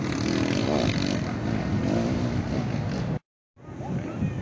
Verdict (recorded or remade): recorded